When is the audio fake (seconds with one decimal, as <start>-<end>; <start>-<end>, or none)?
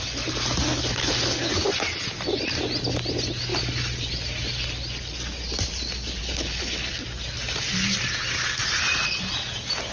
0.7-1.5; 6.2-6.9